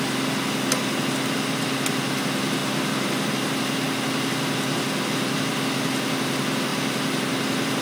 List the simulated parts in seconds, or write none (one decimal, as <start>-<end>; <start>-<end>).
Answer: none